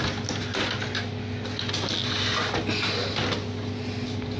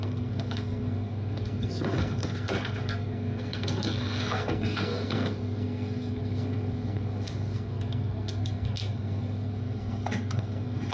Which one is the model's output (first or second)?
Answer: second